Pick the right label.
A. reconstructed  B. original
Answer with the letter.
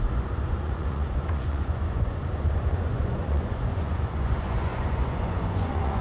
A